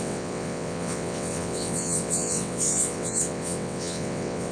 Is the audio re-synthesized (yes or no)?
yes